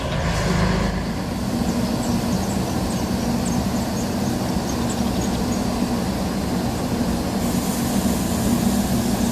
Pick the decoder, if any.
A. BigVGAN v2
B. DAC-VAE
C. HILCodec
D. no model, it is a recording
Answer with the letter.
D